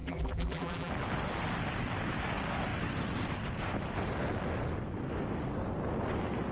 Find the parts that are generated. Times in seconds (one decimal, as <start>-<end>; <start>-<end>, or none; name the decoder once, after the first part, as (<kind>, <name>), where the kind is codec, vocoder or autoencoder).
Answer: 0.0-0.9 (vocoder, BigVGAN v2)

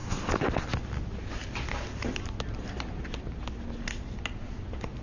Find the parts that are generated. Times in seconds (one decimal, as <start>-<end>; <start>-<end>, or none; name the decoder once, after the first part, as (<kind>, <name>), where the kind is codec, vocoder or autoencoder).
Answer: none

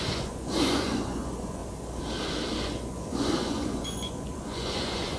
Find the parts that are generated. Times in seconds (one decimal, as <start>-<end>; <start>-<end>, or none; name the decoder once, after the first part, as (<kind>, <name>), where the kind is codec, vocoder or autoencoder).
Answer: 0.0-1.6 (vocoder, Vocos); 2.6-5.2

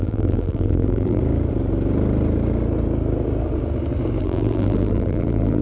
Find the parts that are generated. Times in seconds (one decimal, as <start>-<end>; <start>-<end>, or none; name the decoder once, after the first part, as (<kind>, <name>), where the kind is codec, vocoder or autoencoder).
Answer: 0.0-1.2 (vocoder, BigVGAN v2); 4.2-5.6

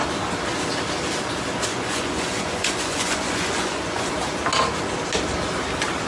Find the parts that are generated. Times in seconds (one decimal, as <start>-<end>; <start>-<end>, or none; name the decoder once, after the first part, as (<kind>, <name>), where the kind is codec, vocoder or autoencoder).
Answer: 1.7-4.1 (vocoder, Vocos)

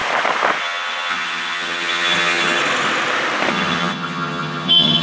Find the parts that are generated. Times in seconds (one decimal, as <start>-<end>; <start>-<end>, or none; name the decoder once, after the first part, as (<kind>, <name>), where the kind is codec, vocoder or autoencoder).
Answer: 0.6-2.6 (vocoder, HiFi-GAN); 3.5-5.0